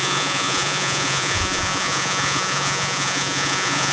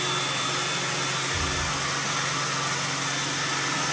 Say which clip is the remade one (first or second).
first